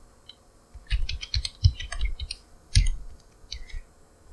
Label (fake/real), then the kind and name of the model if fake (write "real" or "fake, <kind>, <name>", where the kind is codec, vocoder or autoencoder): fake, vocoder, BigVGAN v2